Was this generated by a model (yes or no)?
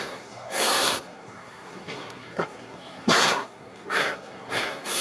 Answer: yes